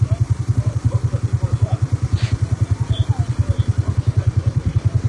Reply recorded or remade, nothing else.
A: remade